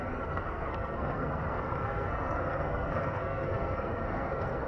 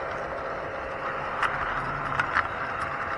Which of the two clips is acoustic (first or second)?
second